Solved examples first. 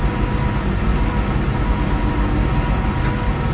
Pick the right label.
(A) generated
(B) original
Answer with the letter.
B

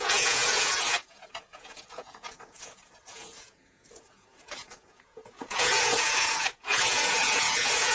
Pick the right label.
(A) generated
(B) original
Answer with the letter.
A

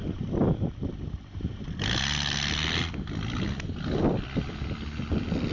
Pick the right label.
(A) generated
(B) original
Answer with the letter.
B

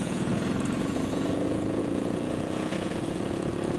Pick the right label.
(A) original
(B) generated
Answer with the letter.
B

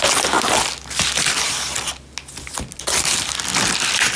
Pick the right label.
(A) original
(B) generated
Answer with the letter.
A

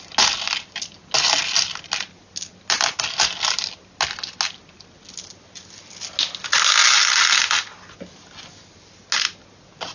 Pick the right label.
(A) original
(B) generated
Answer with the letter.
A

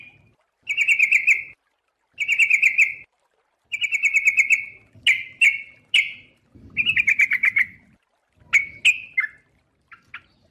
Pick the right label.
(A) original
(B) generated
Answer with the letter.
A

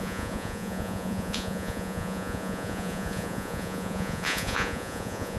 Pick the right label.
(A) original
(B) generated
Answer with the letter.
B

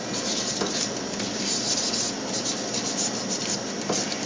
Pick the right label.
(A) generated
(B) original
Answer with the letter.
B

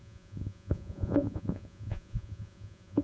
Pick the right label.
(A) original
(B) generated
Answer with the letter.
B